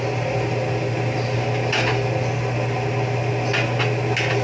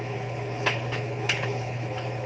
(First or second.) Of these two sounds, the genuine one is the first